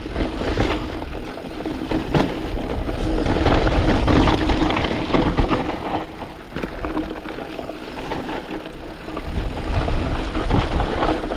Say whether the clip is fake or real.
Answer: real